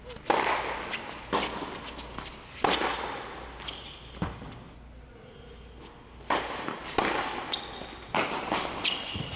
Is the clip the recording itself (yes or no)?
yes